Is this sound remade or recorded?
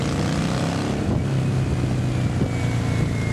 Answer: recorded